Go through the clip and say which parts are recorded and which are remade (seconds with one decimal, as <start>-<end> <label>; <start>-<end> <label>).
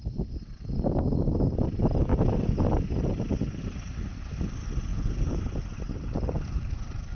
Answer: 0.0-4.9 recorded; 4.9-5.4 remade; 5.4-7.1 recorded